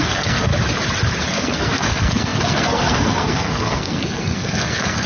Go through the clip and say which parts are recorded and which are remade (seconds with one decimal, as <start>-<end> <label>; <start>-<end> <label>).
0.0-0.5 remade; 0.5-1.2 recorded; 1.2-5.1 remade